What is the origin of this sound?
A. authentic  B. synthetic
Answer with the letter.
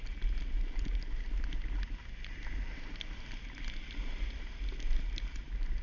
A